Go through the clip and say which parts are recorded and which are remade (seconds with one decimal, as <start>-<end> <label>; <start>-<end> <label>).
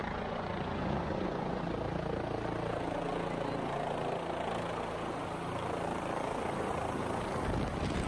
0.0-1.6 remade; 1.6-8.1 recorded